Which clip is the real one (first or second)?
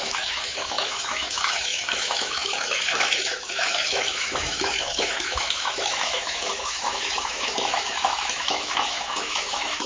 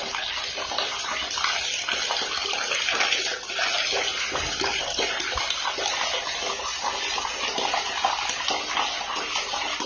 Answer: second